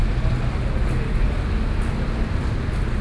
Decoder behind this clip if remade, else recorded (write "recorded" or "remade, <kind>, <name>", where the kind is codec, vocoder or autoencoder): recorded